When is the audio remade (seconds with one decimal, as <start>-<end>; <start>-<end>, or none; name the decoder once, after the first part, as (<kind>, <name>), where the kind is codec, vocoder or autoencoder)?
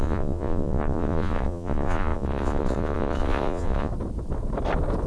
0.0-3.9 (vocoder, Vocos)